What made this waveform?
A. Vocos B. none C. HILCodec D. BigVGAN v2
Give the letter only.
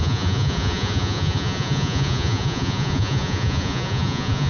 A